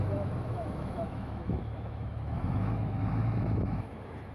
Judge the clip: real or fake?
fake